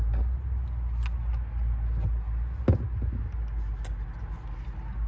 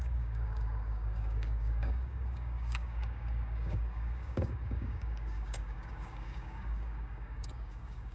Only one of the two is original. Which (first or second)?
first